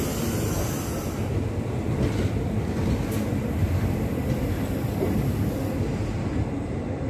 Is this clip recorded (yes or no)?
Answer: yes